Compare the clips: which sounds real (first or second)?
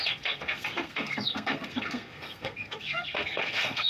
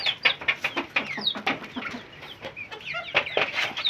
second